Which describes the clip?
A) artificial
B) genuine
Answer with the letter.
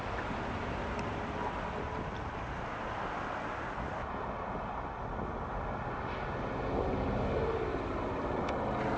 B